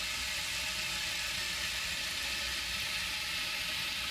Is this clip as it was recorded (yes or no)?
yes